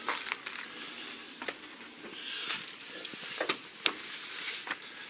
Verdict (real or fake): real